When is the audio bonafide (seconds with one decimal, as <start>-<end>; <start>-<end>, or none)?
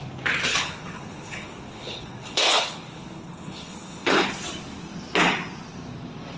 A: 0.0-0.5; 4.3-6.4